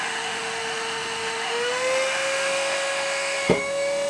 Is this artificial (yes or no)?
yes